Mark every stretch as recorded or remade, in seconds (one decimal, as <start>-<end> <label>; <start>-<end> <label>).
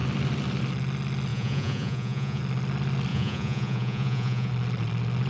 0.0-1.3 recorded; 1.3-2.4 remade; 2.4-3.1 recorded; 3.1-4.5 remade; 4.5-5.3 recorded